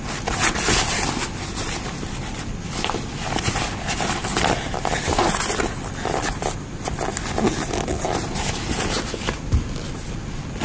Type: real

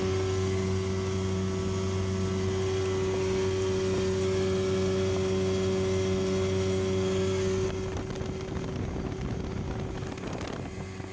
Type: real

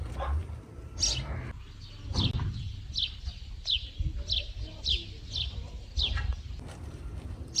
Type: real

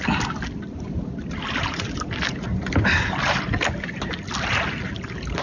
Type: real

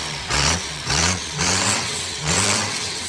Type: fake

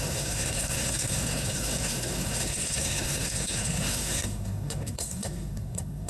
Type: fake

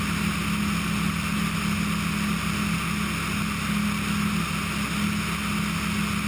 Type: real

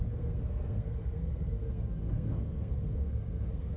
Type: fake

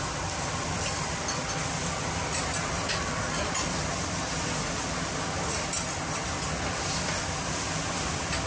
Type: real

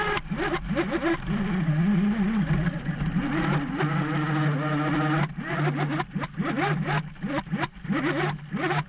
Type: real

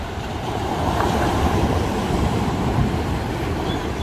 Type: fake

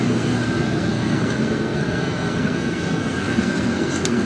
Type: fake